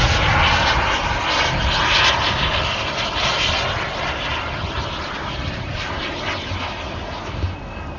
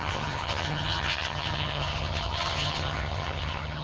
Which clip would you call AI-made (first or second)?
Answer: second